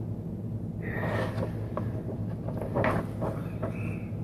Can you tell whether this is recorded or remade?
recorded